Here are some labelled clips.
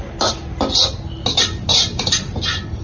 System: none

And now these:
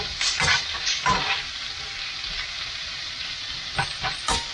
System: none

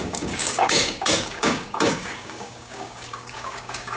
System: codec, DAC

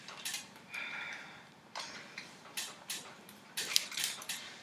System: vocoder, BigVGAN v2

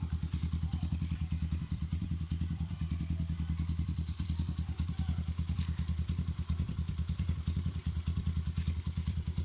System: vocoder, BigVGAN v2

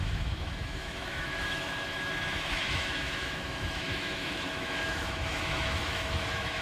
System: autoencoder, DAC-VAE